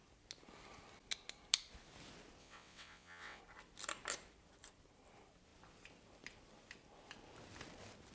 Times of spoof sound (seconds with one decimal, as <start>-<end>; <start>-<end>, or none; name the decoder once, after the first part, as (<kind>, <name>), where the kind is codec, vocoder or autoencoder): 2.4-3.4 (vocoder, WaveNeXt)